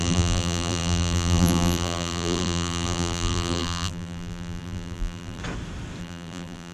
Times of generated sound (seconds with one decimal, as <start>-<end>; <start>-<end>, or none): 0.0-5.4; 6.0-6.7